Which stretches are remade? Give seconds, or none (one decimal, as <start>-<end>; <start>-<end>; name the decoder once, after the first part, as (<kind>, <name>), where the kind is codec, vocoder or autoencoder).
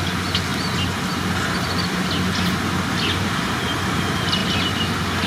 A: none